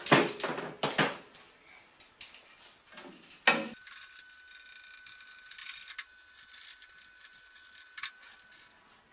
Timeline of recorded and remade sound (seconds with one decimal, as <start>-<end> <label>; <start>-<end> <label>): 0.0-9.1 recorded